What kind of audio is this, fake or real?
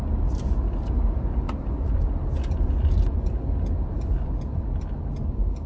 real